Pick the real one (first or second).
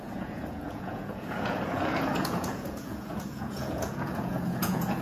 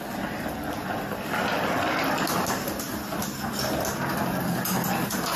second